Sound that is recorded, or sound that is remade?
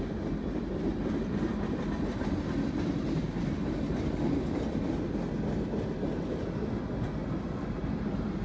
recorded